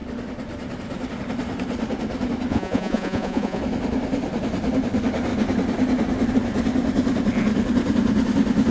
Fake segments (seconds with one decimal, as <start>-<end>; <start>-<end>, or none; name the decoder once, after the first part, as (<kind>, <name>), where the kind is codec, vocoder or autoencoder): 2.5-3.6 (vocoder, Vocos)